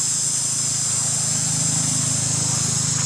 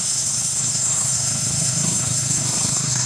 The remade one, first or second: second